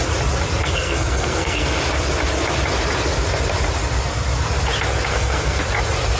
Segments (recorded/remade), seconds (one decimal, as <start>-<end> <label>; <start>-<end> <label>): 0.0-0.6 recorded; 0.6-1.8 remade; 1.8-5.1 recorded; 5.1-5.6 remade; 5.6-6.2 recorded